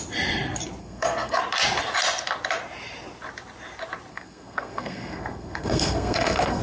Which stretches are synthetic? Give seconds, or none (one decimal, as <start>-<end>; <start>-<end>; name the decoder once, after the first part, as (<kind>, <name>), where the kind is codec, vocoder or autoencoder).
0.8-1.4 (codec, SNAC); 4.1-6.6